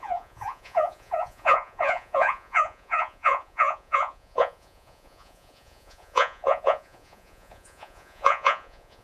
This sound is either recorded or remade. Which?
remade